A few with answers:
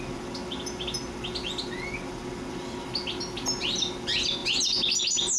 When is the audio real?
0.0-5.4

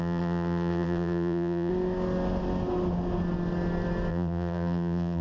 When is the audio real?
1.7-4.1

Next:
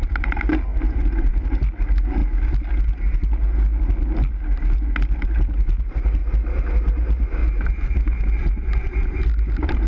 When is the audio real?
2.2-5.2; 6.2-6.7

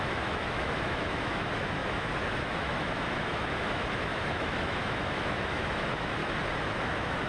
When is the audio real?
6.2-6.8